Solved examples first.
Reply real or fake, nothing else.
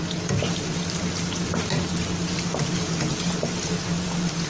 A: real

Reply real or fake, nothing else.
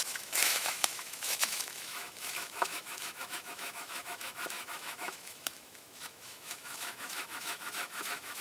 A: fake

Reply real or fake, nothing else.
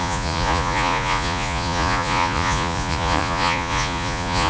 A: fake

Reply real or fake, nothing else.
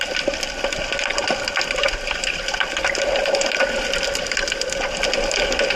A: real